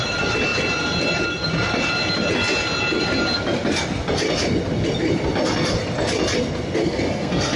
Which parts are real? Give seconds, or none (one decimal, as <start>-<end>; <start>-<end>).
0.0-6.8